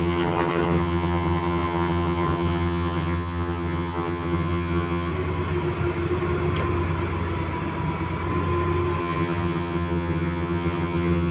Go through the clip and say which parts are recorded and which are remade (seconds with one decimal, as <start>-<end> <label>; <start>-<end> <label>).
0.0-5.1 remade; 5.1-9.0 recorded; 9.0-11.3 remade